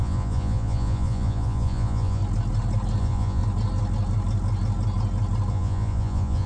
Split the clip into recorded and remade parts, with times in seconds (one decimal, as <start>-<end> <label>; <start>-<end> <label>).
0.0-2.2 remade; 2.2-3.0 recorded; 3.0-3.4 remade; 3.4-5.5 recorded; 5.5-6.5 remade